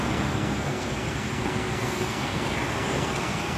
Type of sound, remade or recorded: remade